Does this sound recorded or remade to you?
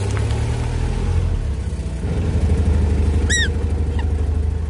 recorded